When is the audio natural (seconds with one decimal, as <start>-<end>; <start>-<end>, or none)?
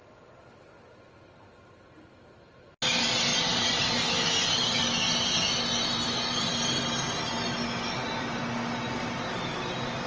0.0-3.3; 3.9-6.0; 6.6-10.1